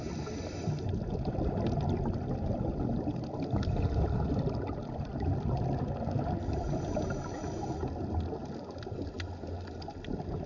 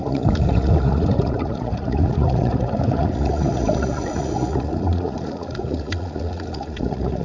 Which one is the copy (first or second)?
second